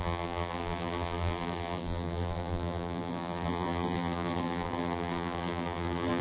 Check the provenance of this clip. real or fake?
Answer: fake